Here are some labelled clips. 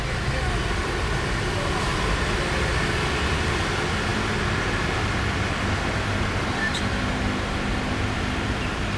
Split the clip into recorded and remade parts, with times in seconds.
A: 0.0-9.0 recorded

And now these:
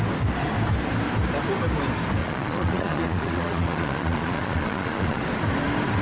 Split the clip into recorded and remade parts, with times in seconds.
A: 0.0-2.2 recorded; 2.2-5.2 remade; 5.2-6.0 recorded

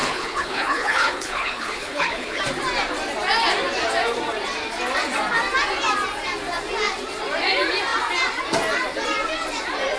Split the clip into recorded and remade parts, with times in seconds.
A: 0.0-2.4 remade; 2.4-10.0 recorded

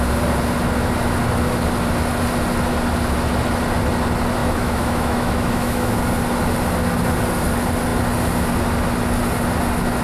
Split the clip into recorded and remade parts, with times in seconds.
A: 0.0-4.4 recorded; 4.4-6.0 remade; 6.0-10.0 recorded

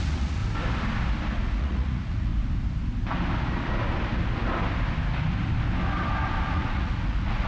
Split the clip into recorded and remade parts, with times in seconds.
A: 0.0-0.4 remade; 0.4-1.4 recorded; 1.4-2.3 remade; 2.3-6.5 recorded; 6.5-7.5 remade

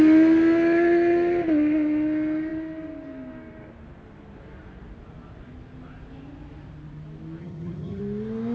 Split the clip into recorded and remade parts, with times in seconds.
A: 0.0-7.4 recorded; 7.4-8.0 remade; 8.0-8.5 recorded

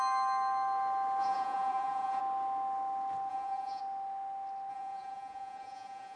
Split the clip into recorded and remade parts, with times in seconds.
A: 0.0-1.2 recorded; 1.2-2.2 remade; 2.2-3.3 recorded; 3.3-3.8 remade; 3.8-4.7 recorded; 4.7-6.2 remade

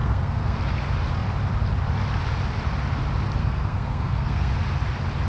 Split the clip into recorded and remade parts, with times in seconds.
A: 0.0-0.6 remade; 0.6-3.4 recorded; 3.4-4.5 remade; 4.5-5.3 recorded